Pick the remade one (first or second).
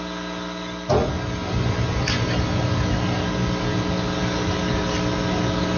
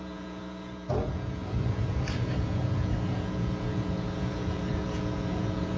second